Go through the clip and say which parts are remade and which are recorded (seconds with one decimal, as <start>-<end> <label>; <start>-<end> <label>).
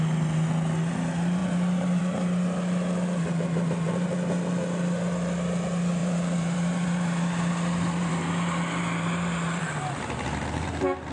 0.0-6.0 recorded; 6.0-8.1 remade; 8.1-11.1 recorded